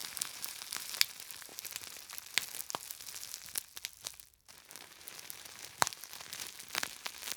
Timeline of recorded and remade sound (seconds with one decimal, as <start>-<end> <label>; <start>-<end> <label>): 0.0-1.5 remade; 1.5-4.5 recorded; 4.5-7.4 remade